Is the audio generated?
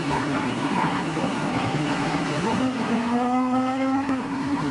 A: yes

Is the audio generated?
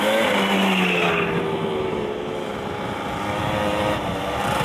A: no